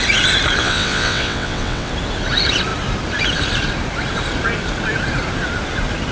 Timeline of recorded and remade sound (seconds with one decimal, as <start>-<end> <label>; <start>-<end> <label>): 0.0-0.6 recorded; 0.6-1.9 remade; 1.9-6.1 recorded